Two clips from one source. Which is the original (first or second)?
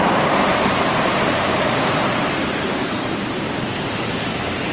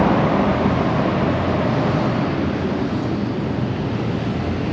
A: second